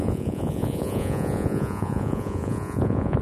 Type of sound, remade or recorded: remade